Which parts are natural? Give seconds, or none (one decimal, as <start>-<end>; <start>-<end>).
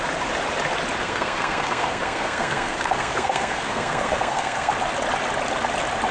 0.0-1.0; 4.7-6.1